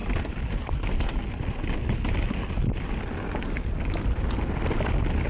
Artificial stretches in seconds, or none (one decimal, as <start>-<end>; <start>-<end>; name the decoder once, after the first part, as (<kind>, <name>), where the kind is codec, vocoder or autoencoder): none